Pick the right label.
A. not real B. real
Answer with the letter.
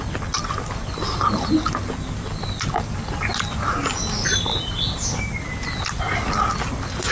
B